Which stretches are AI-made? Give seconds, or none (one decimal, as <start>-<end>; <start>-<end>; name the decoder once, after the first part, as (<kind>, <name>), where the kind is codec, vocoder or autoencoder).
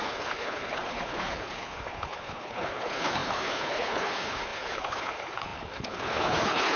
0.0-6.8 (codec, HILCodec)